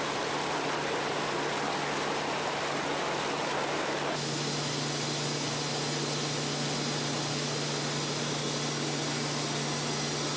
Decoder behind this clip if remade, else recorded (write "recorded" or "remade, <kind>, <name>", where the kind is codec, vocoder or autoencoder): recorded